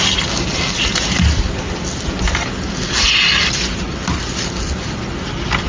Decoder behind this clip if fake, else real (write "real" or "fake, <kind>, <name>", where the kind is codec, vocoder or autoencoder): real